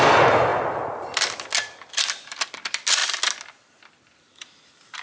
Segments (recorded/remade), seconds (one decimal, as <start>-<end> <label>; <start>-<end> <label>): 0.0-5.0 recorded